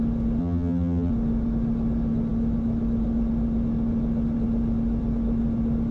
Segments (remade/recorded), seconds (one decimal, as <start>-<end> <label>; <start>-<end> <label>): 0.0-0.4 recorded; 0.4-1.1 remade; 1.1-5.9 recorded